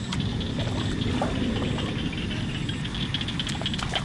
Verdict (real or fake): real